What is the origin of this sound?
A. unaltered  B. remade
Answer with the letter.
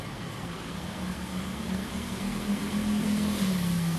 B